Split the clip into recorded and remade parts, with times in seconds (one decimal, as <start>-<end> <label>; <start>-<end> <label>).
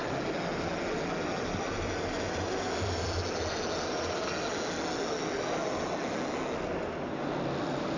0.0-8.0 recorded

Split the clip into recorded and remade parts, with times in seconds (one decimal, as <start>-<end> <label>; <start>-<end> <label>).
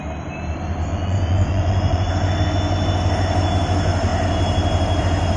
0.0-0.9 recorded; 0.9-2.1 remade; 2.1-5.4 recorded